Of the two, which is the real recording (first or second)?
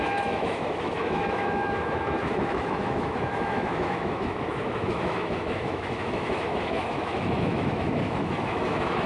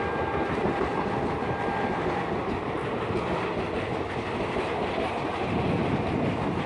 second